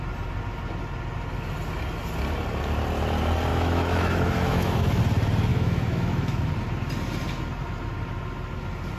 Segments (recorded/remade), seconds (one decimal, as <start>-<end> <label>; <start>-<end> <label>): 0.0-3.5 recorded; 3.5-5.0 remade; 5.0-5.5 recorded; 5.5-6.5 remade; 6.5-9.0 recorded